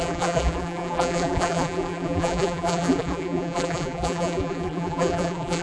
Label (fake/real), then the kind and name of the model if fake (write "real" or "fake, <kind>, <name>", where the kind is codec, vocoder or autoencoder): fake, vocoder, BigVGAN v2